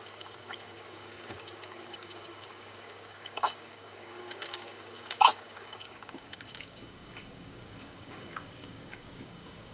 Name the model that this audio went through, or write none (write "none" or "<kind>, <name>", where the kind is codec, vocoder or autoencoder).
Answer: codec, DAC